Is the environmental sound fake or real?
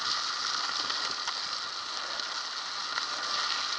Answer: real